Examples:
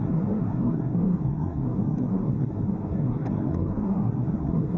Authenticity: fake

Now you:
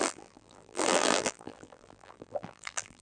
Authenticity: fake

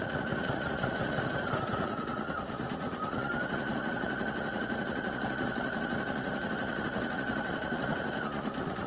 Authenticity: fake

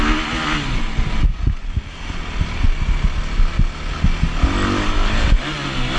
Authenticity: real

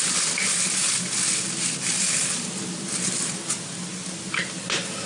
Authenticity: real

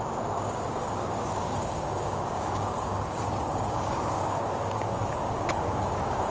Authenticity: fake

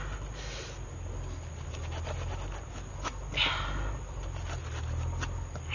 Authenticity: real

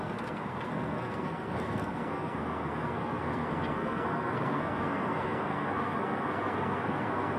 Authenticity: fake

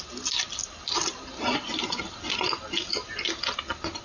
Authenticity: real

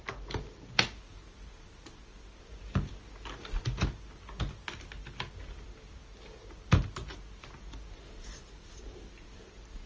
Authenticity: real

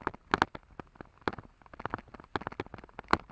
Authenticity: real